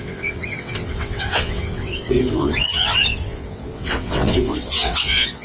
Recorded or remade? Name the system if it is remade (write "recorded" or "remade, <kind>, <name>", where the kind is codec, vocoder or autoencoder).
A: remade, vocoder, WaveNeXt